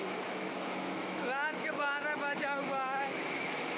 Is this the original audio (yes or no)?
no